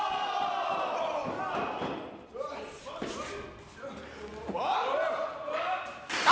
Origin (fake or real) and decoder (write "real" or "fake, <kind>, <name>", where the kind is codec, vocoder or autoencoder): real